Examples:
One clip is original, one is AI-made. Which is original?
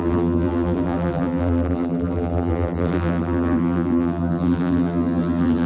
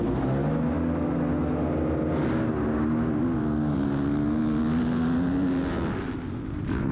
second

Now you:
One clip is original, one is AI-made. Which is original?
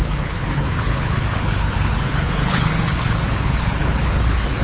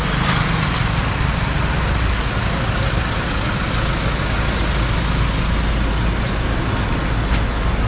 second